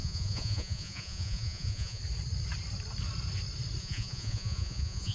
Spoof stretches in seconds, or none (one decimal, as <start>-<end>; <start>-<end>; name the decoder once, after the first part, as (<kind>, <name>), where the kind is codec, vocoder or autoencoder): 0.0-2.0 (vocoder, Vocos); 3.8-5.1